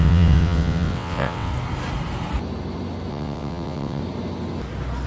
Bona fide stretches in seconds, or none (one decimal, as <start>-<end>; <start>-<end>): 1.5-3.1; 4.0-5.1